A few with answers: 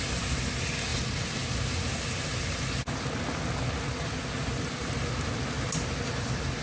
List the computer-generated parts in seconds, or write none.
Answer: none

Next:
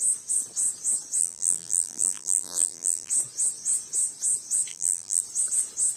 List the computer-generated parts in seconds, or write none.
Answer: 1.2-3.1 (vocoder, BigVGAN v2); 4.7-5.2